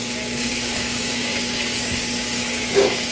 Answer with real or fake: fake